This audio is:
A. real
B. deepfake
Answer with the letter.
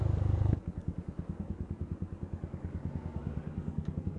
B